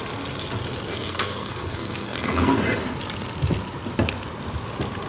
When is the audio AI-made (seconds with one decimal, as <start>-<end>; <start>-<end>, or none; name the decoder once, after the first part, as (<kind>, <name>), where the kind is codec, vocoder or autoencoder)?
0.9-2.6 (codec, SNAC)